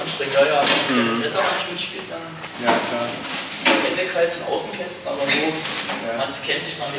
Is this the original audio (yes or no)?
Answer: yes